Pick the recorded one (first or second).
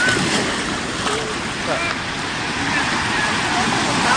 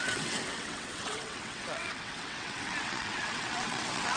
first